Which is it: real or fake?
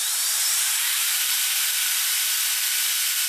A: fake